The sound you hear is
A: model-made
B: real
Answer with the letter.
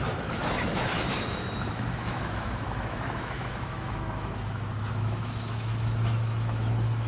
A